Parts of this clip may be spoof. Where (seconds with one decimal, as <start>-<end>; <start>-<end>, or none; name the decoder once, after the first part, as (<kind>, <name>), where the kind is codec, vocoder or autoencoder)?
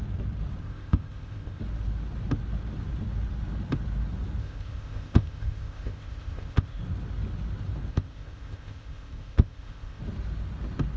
0.6-1.6 (codec, ZipCodec); 4.4-6.8; 7.9-10.0